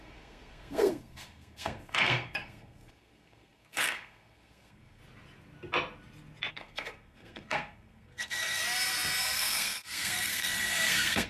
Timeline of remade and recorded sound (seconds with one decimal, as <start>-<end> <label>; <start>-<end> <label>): 0.0-5.0 remade; 5.0-6.5 recorded; 6.5-8.6 remade; 8.6-9.2 recorded; 9.2-11.3 remade